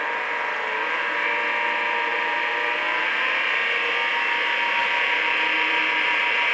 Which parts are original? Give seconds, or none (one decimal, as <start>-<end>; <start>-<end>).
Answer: 0.0-4.8